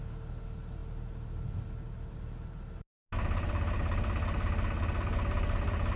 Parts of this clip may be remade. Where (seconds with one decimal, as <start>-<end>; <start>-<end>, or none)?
none